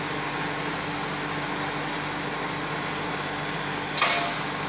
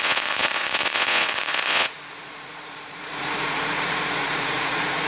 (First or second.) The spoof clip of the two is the second